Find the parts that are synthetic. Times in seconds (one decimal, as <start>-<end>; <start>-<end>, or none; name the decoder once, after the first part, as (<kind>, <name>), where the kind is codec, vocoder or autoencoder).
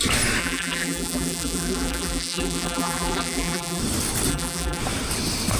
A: 0.4-3.8 (vocoder, BigVGAN v2); 4.3-4.8